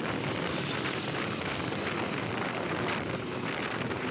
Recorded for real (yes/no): yes